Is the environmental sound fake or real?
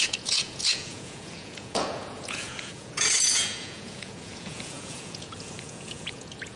fake